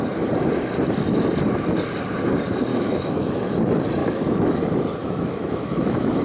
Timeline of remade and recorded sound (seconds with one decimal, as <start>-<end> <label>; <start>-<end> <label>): 0.0-2.7 recorded; 2.7-3.6 remade; 3.6-4.0 recorded; 4.0-4.6 remade; 4.6-5.0 recorded; 5.0-6.2 remade